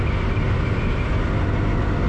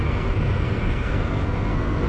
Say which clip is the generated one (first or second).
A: second